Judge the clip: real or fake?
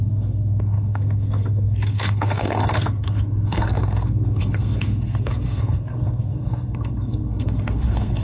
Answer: fake